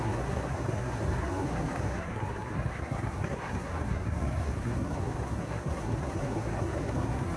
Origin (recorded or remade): remade